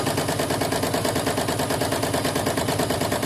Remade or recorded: recorded